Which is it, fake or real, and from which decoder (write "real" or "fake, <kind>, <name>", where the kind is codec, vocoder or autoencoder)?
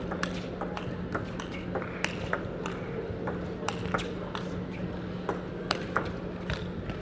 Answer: real